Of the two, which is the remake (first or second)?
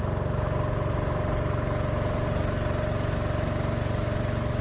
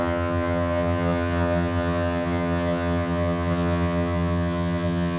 second